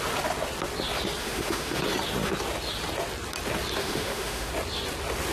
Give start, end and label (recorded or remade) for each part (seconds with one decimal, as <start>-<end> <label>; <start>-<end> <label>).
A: 0.0-1.2 recorded; 1.2-1.8 remade; 1.8-3.8 recorded; 3.8-4.5 remade; 4.5-5.3 recorded